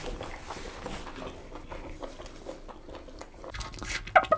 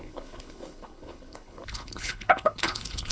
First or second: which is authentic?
first